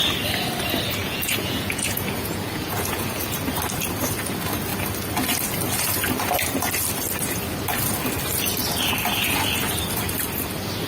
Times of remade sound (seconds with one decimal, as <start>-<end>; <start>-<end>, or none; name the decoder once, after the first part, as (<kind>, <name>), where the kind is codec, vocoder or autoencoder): 1.0-3.3 (vocoder, Vocos)